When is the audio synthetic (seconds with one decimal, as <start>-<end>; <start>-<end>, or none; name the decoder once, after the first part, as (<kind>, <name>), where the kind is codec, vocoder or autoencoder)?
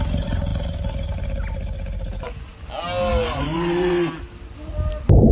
3.1-3.9 (vocoder, BigVGAN v2)